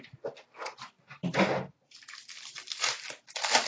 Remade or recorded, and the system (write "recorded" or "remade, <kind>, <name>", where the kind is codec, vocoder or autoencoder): recorded